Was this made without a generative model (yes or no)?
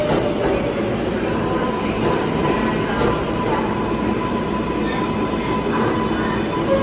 yes